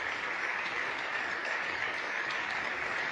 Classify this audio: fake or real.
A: fake